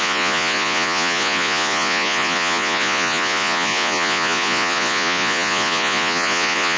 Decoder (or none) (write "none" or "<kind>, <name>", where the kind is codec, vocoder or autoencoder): vocoder, Vocos